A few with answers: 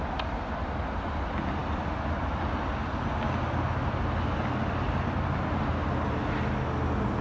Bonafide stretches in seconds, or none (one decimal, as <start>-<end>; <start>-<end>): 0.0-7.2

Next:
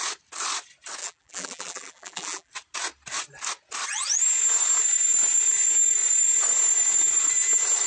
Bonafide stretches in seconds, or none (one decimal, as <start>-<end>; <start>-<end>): 0.0-1.0; 2.5-7.9

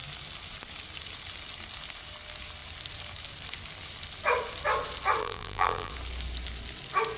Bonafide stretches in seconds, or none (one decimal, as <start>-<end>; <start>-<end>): 0.0-5.2; 5.9-7.2

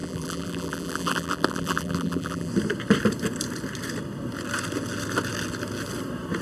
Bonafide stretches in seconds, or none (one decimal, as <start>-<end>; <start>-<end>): 2.5-6.4

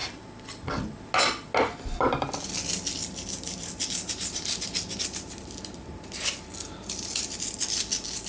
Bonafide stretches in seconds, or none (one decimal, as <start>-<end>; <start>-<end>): 0.0-5.0